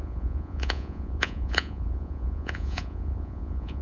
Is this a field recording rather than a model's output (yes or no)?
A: no